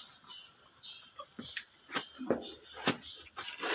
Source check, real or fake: real